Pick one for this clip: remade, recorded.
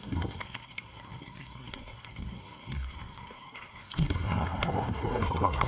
remade